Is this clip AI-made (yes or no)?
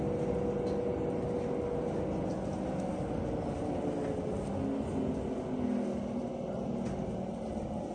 no